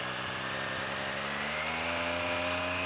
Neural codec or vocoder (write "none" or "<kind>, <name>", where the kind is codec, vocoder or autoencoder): none